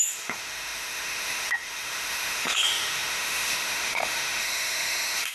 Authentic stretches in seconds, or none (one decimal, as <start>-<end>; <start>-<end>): none